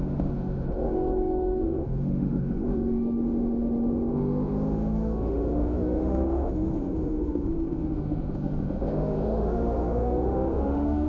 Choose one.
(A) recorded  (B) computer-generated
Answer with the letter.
B